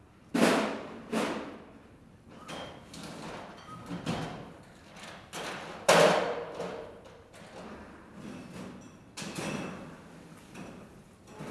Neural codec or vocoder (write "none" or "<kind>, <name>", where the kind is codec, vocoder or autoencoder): none